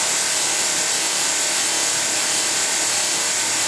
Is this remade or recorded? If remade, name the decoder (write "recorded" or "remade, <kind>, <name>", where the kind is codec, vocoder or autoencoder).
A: recorded